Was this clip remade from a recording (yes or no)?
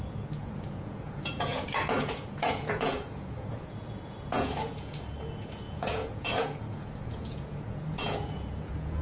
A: yes